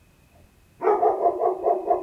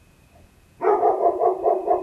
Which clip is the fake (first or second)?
second